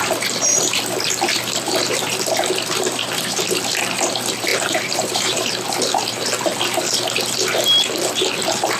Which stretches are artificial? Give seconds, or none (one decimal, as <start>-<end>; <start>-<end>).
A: 4.5-5.5